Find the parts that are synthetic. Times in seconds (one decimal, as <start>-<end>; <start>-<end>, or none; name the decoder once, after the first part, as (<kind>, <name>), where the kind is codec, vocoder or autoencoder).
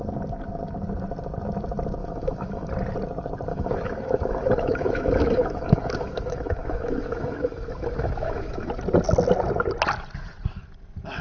2.0-2.7 (autoencoder, DAC-VAE); 3.5-8.7